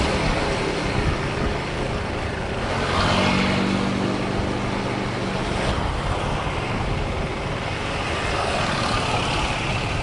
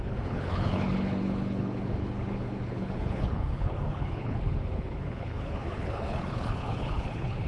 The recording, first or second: first